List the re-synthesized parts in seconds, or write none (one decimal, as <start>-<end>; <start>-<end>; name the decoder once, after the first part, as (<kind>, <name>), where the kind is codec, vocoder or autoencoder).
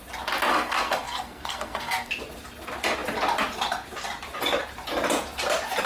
0.5-2.1 (codec, SNAC)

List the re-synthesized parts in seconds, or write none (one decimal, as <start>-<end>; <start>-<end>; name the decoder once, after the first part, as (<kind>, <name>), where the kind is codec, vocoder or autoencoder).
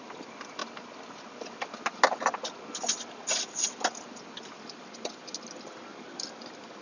none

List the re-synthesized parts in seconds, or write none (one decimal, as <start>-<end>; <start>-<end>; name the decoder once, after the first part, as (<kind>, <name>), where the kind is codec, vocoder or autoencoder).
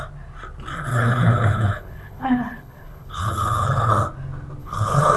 0.9-3.9 (codec, HILCodec); 4.6-5.2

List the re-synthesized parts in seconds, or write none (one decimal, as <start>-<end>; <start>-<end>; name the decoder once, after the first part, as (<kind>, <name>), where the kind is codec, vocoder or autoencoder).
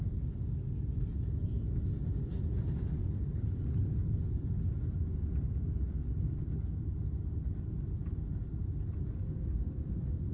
none